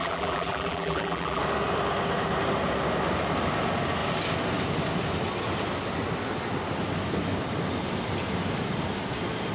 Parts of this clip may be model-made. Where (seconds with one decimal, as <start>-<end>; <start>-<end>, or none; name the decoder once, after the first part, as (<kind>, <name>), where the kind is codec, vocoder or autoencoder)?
0.0-1.4 (vocoder, BigVGAN v2)